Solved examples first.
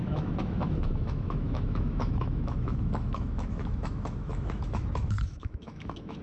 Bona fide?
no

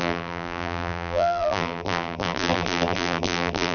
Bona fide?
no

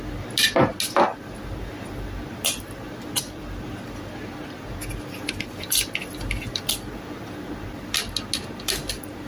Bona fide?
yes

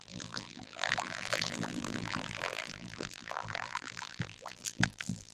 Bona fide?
no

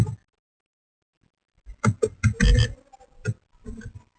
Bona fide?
yes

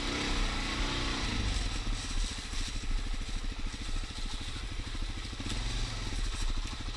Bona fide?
yes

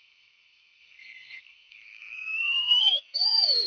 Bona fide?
no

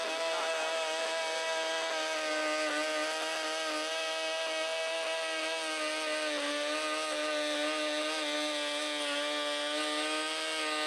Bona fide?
yes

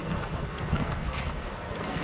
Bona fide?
no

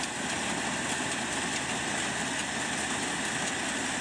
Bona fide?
yes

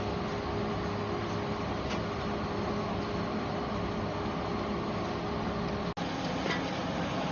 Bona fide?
yes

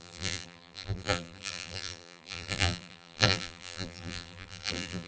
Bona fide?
no